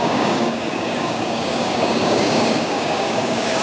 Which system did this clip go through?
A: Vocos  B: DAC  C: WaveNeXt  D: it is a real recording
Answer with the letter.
B